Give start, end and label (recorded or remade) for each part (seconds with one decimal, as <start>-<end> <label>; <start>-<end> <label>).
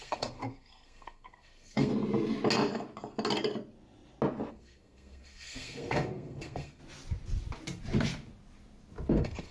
0.0-1.9 remade; 1.9-4.5 recorded; 4.5-6.8 remade; 6.8-9.1 recorded; 9.1-9.5 remade